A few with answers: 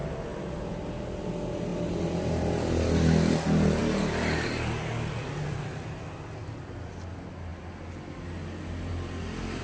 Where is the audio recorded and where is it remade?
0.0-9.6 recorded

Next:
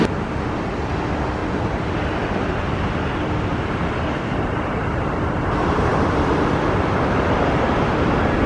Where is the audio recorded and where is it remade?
0.0-8.5 recorded

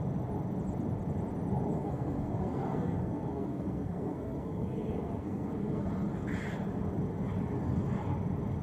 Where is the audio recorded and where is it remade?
0.0-1.7 recorded; 1.7-5.9 remade; 5.9-8.6 recorded

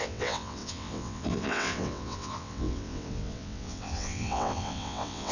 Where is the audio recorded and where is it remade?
0.0-5.3 remade

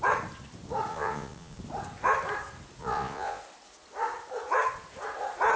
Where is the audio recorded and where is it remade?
0.0-0.9 recorded; 0.9-1.6 remade; 1.6-2.8 recorded; 2.8-3.4 remade; 3.4-5.6 recorded

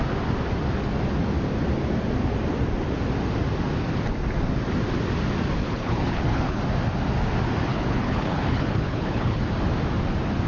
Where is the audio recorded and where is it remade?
0.0-5.6 recorded; 5.6-6.6 remade; 6.6-7.7 recorded; 7.7-9.4 remade; 9.4-10.5 recorded